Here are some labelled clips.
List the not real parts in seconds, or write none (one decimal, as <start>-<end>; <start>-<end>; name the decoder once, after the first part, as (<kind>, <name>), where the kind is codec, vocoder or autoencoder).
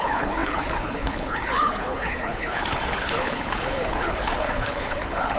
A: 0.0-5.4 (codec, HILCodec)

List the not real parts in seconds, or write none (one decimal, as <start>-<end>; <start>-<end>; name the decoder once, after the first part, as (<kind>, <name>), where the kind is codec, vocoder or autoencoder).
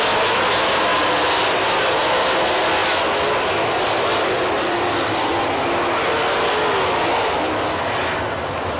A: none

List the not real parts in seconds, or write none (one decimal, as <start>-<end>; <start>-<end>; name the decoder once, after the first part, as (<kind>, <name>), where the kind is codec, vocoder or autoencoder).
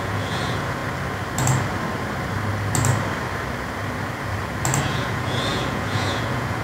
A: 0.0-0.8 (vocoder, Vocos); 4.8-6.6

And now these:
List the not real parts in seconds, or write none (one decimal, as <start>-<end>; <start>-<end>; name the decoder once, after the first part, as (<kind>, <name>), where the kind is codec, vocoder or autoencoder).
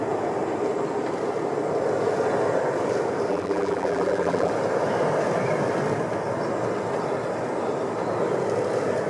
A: 3.3-4.5 (vocoder, BigVGAN v2)